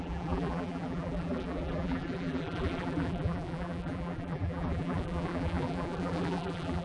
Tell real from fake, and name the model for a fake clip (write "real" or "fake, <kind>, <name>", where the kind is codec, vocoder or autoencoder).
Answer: fake, vocoder, BigVGAN v2